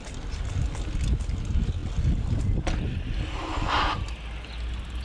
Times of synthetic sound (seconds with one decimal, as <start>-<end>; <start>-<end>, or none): none